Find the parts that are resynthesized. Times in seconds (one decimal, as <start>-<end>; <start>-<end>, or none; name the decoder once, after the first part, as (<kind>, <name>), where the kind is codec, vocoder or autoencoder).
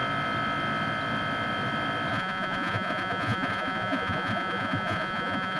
2.1-5.6 (vocoder, Vocos)